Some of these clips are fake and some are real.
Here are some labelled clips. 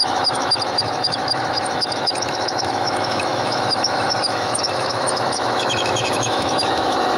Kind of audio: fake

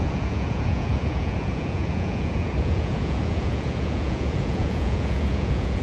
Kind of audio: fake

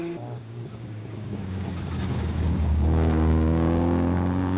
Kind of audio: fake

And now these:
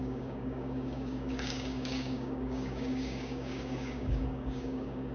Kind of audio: fake